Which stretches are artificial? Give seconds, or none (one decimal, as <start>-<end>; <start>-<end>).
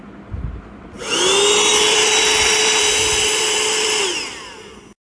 1.7-4.8